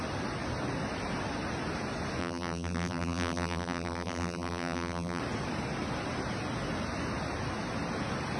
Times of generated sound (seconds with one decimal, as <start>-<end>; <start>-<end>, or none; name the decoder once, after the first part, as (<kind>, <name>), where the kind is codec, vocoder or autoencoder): 2.2-5.2 (vocoder, BigVGAN v2)

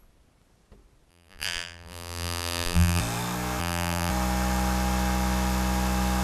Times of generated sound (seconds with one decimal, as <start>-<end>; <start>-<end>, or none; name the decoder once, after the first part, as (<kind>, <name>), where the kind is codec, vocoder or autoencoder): 1.1-3.0 (vocoder, BigVGAN v2); 3.6-4.1

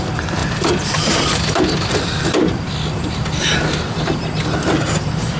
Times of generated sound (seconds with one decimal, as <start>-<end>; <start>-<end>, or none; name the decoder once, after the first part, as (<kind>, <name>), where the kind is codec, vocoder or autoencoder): 0.4-3.6 (vocoder, BigVGAN v2)